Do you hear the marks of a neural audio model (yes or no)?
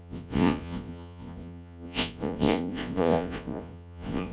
yes